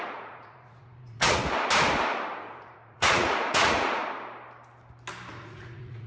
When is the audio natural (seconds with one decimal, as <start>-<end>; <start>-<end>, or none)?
1.4-2.4; 4.0-5.3